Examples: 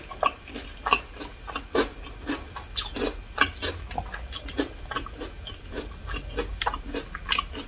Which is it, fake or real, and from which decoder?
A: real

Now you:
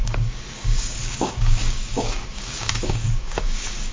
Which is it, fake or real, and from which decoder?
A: fake, codec, DAC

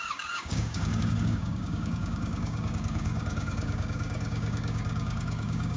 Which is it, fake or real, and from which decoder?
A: fake, codec, DAC